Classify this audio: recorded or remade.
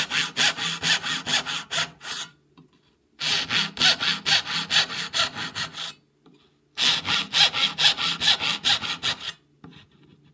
recorded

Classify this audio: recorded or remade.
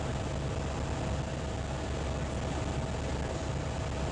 recorded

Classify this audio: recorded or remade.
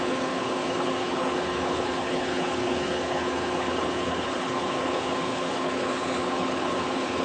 remade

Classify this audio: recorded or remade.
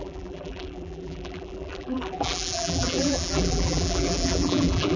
remade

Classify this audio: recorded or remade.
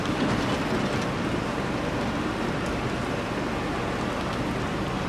recorded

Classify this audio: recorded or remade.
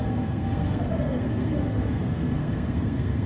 remade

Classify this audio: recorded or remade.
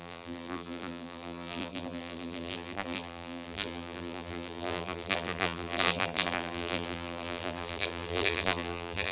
remade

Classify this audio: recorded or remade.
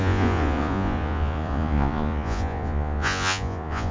remade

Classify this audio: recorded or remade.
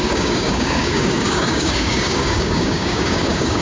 remade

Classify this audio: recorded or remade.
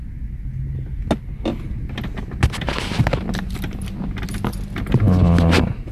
recorded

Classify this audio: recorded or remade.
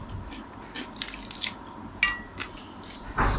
recorded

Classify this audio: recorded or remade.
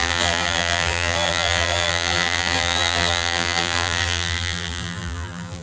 remade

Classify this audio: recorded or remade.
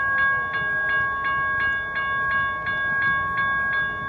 recorded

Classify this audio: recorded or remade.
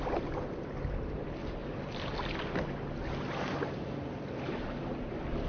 recorded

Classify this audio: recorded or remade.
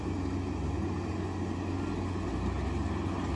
recorded